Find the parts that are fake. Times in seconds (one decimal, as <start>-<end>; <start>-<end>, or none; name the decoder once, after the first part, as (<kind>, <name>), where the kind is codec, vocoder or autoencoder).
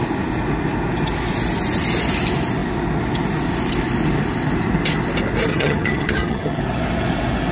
5.5-6.6 (vocoder, HiFi-GAN)